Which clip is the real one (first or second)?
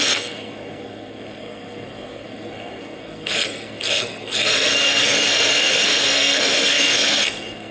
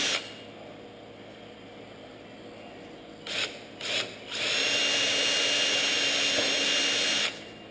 second